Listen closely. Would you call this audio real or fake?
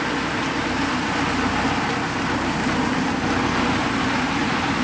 real